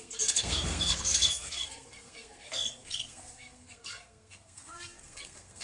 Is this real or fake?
fake